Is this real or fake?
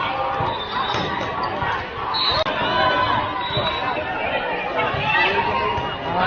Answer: real